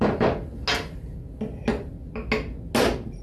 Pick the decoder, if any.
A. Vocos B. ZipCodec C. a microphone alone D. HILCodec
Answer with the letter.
C